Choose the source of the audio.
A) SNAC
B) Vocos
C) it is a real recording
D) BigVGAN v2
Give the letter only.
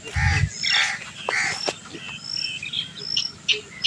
C